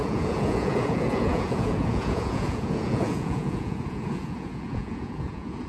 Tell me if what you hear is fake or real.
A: fake